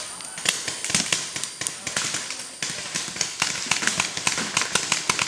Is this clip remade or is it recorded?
recorded